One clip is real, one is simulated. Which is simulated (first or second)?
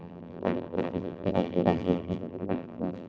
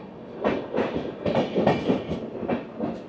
first